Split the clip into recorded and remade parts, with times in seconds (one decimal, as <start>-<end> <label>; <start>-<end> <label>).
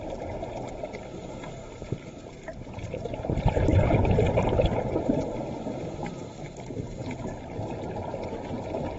0.0-1.6 recorded; 1.6-5.3 remade; 5.3-9.0 recorded